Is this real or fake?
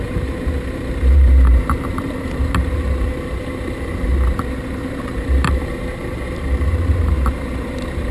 fake